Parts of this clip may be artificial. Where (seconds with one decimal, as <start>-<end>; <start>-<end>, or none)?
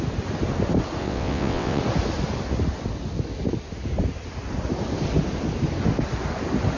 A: 1.0-1.8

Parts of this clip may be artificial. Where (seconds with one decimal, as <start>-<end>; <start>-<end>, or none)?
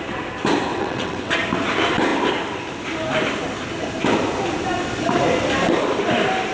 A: 0.7-1.3